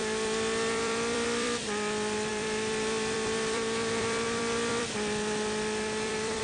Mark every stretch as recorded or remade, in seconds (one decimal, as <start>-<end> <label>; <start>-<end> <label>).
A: 0.0-6.4 remade